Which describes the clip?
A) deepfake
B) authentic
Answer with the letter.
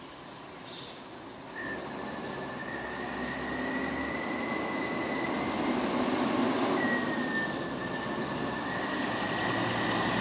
B